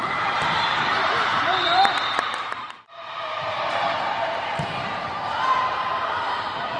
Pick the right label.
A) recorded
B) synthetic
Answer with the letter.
B